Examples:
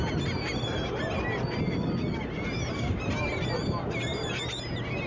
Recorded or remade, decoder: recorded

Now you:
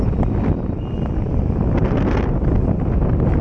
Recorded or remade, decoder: recorded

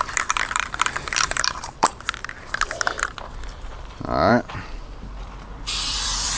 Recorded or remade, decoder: remade, vocoder, BigVGAN v2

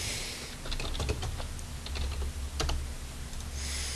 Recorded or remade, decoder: recorded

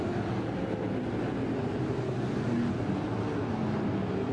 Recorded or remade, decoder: recorded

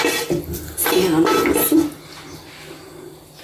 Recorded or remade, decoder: recorded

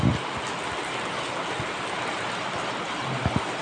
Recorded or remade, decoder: recorded